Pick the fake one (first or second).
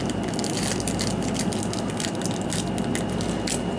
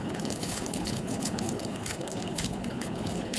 second